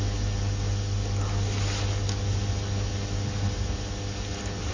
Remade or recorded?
recorded